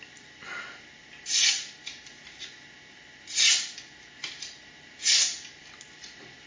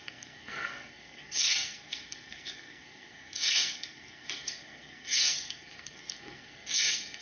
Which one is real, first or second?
first